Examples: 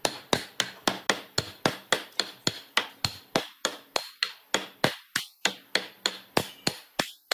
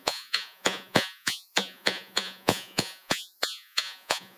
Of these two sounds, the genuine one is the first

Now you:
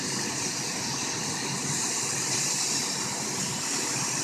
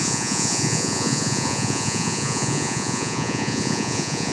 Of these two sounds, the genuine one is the first